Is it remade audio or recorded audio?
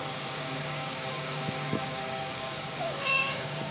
remade